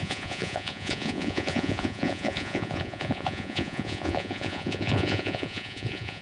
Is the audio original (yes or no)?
no